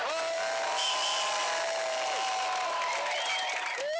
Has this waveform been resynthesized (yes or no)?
no